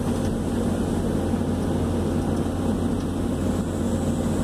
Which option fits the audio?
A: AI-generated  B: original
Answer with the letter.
B